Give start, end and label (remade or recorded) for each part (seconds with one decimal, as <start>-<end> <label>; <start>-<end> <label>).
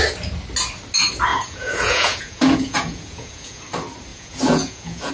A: 0.0-1.3 recorded; 1.3-3.6 remade; 3.6-4.1 recorded; 4.1-5.1 remade